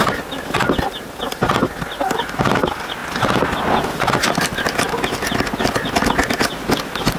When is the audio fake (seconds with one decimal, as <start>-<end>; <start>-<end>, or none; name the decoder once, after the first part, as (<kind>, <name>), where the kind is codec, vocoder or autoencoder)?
none